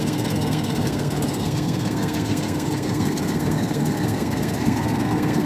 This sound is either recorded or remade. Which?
remade